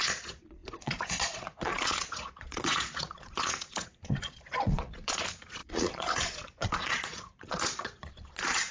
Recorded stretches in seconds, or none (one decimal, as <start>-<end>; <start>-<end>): none